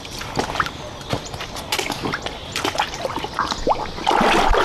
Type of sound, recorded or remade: recorded